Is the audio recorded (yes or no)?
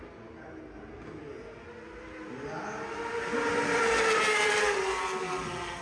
yes